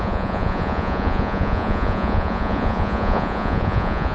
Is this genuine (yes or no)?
no